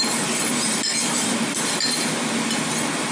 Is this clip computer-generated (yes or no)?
no